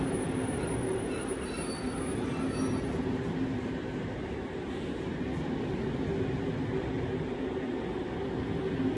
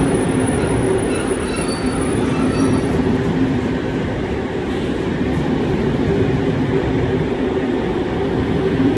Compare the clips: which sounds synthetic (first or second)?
second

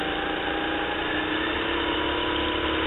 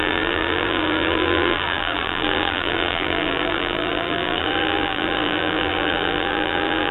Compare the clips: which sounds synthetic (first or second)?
second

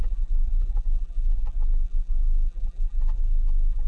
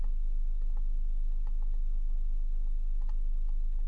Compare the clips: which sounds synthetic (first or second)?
first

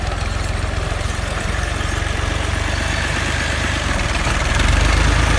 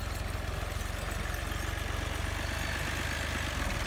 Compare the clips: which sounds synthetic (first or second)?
first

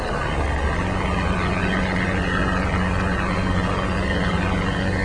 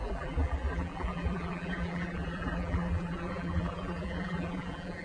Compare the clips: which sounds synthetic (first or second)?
second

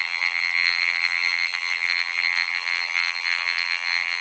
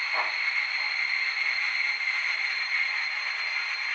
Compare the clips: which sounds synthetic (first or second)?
first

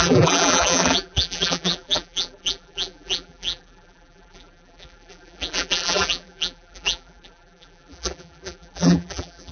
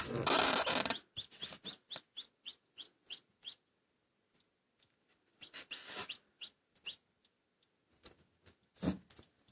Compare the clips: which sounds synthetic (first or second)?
first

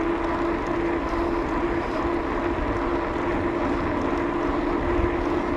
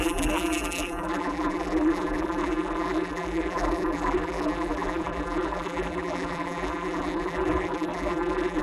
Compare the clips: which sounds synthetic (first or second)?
second